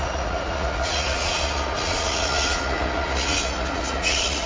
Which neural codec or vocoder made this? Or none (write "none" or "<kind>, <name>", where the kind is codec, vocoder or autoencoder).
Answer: vocoder, Vocos